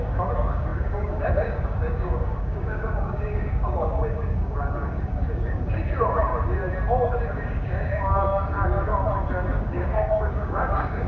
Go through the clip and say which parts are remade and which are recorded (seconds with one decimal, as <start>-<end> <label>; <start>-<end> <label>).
0.0-6.3 remade; 6.3-7.1 recorded; 7.1-8.9 remade; 8.9-9.5 recorded; 9.5-11.1 remade